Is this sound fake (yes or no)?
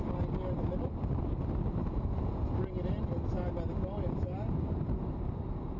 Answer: no